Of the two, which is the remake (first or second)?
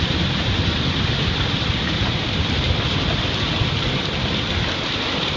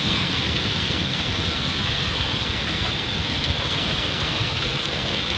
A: second